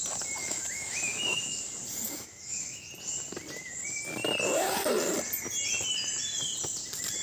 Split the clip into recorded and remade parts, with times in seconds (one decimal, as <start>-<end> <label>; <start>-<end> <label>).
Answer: 0.0-0.4 recorded; 0.4-1.6 remade; 1.6-2.0 recorded; 2.0-2.9 remade; 2.9-7.2 recorded